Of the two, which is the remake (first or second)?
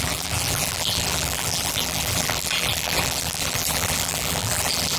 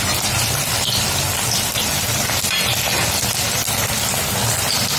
first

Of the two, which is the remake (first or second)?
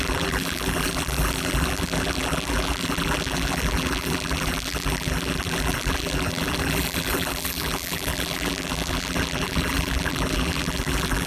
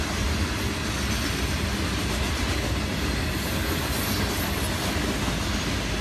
first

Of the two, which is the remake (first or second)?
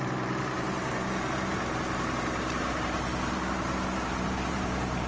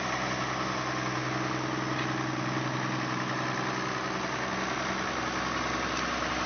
first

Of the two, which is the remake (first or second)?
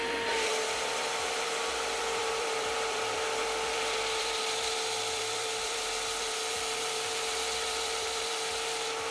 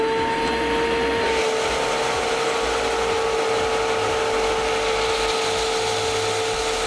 first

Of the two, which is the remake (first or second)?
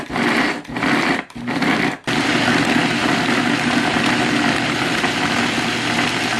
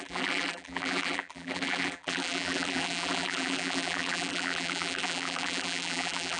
second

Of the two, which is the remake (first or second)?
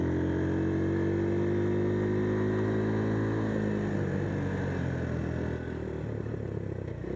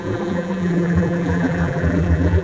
second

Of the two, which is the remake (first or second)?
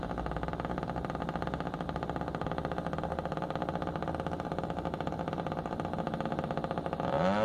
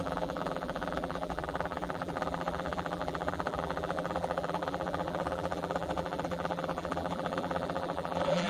second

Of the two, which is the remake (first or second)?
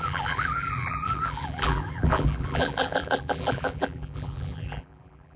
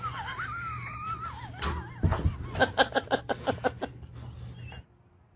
first